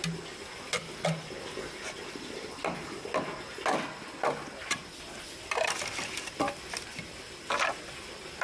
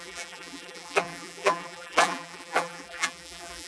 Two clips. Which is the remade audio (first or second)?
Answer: second